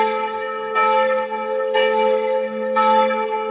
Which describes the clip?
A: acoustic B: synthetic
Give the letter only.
B